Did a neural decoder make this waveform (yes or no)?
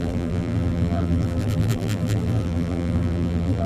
yes